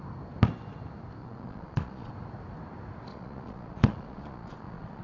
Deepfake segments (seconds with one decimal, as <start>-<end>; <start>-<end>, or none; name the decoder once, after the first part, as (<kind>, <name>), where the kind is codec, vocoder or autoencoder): 1.2-2.1 (vocoder, Vocos); 3.1-5.0